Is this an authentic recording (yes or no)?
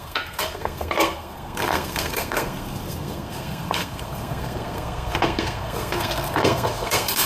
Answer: no